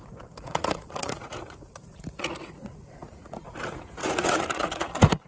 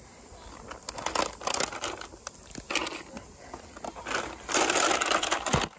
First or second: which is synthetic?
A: first